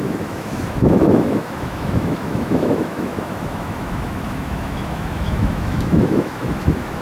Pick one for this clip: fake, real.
fake